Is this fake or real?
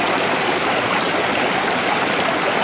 real